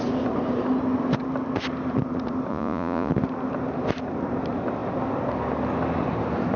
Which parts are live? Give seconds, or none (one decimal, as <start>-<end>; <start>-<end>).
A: 0.0-2.5; 3.1-6.6